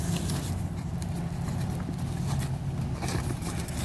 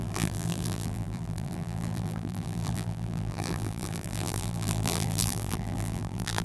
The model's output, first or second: second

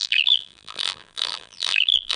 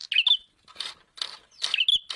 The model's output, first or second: first